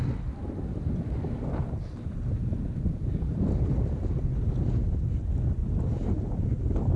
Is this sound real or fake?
real